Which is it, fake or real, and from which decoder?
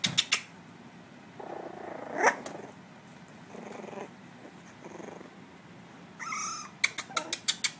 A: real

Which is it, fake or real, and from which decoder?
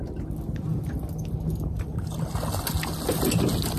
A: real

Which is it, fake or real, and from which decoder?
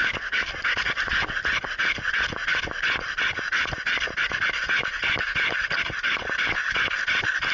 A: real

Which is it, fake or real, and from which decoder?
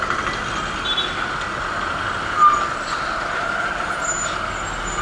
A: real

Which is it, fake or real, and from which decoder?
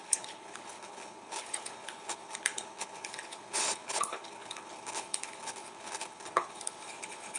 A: fake, codec, HILCodec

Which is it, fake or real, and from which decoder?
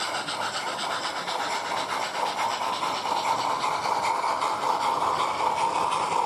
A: real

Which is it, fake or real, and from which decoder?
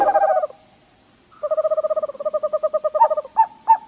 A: real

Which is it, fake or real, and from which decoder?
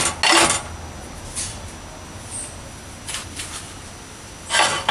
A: real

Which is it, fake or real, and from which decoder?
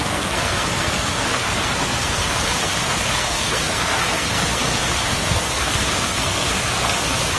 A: fake, codec, SNAC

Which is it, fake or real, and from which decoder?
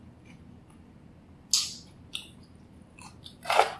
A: real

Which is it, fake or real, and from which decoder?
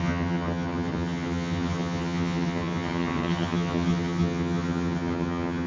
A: fake, vocoder, HiFi-GAN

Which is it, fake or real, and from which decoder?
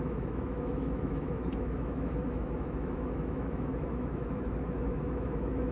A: fake, autoencoder, DAC-VAE